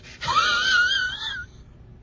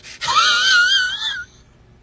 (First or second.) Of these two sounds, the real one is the second